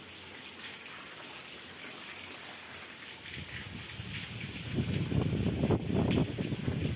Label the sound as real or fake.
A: real